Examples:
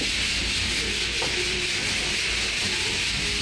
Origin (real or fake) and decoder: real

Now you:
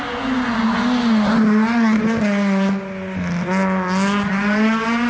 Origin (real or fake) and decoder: real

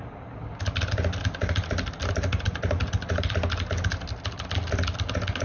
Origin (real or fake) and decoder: real